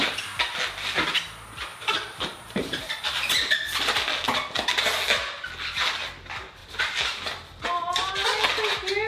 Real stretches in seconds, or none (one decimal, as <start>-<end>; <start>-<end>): 0.0-1.7; 3.3-6.6; 8.1-9.1